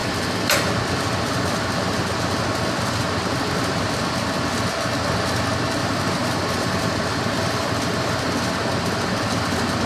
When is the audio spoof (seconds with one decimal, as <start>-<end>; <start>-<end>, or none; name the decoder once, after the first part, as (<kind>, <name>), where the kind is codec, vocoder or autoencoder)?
0.0-0.7 (vocoder, BigVGAN v2); 5.8-8.5